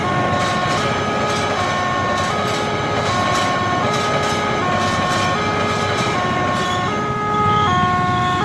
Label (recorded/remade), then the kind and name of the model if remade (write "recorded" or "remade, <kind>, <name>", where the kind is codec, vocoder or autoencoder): recorded